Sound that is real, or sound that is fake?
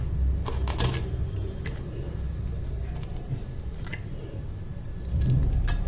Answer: real